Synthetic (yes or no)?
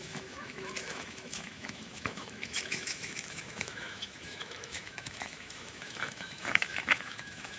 yes